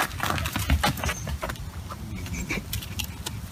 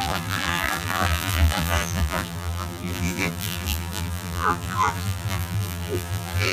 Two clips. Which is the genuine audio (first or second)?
first